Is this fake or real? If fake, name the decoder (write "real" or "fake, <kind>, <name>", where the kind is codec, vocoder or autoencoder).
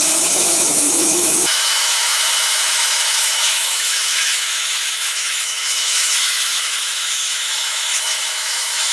fake, autoencoder, DAC-VAE